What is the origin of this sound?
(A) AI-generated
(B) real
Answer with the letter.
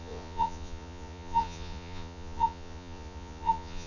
A